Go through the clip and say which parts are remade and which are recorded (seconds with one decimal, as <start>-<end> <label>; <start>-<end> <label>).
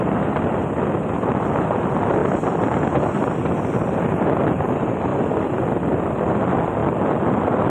0.0-7.7 recorded